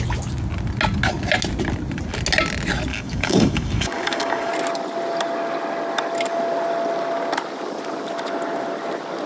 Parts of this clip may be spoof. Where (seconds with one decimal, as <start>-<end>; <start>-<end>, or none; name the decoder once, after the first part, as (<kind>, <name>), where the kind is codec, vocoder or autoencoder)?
2.9-4.5 (codec, DAC)